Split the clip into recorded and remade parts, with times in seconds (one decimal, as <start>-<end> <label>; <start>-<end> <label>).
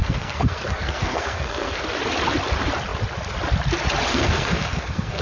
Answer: 0.0-1.8 remade; 1.8-4.1 recorded; 4.1-5.2 remade